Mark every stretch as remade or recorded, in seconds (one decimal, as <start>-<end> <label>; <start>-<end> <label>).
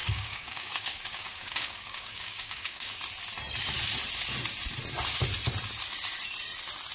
0.0-3.0 remade; 3.0-6.9 recorded